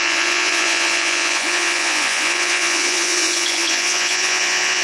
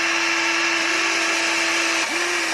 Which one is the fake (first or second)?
first